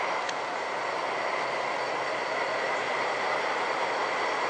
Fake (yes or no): no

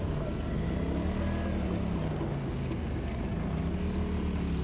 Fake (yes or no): no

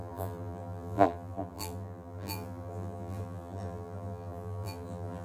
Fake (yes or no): yes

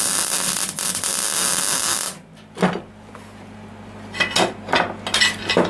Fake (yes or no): no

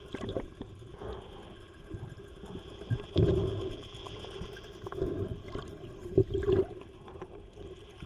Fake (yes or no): yes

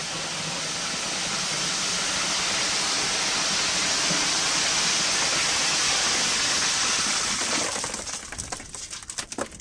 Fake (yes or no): no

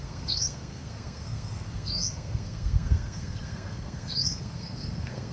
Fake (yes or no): yes